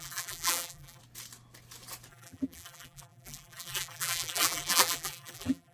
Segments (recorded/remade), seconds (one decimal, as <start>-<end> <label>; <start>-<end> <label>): 0.0-1.0 remade; 1.0-2.1 recorded; 2.1-5.7 remade